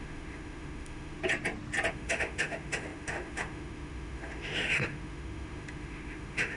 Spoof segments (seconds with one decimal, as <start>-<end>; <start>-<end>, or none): 0.0-1.2; 1.9-6.6